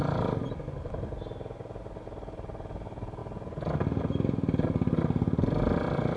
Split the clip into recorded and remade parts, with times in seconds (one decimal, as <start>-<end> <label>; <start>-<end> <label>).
0.0-6.2 recorded

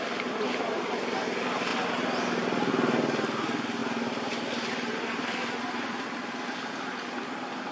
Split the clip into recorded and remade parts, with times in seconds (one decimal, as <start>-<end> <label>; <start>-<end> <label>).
0.0-7.7 recorded